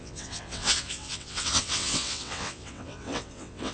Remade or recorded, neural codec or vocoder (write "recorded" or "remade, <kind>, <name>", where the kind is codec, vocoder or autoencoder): remade, vocoder, WaveNeXt